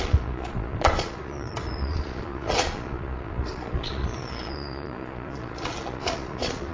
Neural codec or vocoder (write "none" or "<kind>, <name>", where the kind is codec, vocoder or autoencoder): vocoder, Vocos